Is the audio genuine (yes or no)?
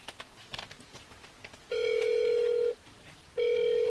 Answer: yes